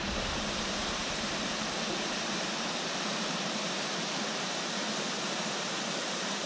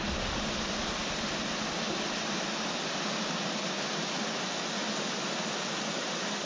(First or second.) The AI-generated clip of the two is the first